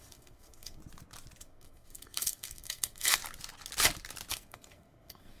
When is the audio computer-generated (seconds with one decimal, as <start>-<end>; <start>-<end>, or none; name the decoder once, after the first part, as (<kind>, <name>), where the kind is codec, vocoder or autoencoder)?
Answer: 0.0-0.8 (codec, SNAC); 1.4-3.2; 4.3-5.4